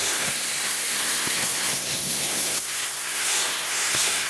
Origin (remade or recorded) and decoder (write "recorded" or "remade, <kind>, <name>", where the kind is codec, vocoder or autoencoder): remade, codec, SNAC